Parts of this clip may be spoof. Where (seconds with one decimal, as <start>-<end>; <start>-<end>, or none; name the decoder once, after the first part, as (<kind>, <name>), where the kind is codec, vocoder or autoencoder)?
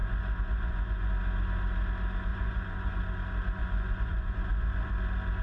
0.0-1.1 (vocoder, Vocos); 2.3-3.0; 3.6-4.9